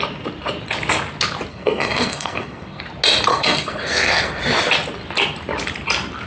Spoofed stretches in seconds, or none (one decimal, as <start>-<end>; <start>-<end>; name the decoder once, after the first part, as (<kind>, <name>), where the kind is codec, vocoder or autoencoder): 1.5-2.8 (codec, SNAC); 3.3-4.4